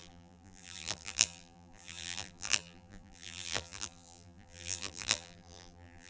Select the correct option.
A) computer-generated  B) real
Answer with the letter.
A